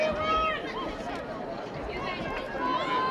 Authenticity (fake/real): real